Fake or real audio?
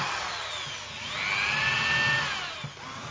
real